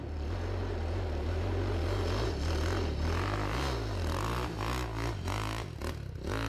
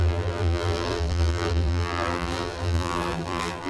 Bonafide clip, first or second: first